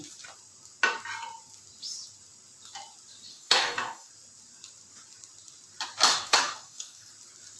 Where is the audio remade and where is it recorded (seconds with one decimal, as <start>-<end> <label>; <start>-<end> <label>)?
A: 0.0-3.3 recorded; 3.3-4.1 remade; 4.1-6.1 recorded; 6.1-7.1 remade; 7.1-7.6 recorded